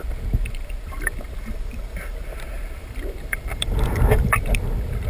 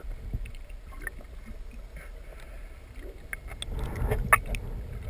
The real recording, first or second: second